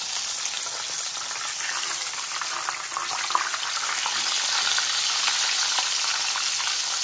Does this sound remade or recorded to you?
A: recorded